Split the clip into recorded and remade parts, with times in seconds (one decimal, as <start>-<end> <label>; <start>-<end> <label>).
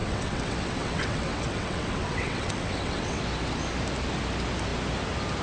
0.0-3.2 remade; 3.2-5.4 recorded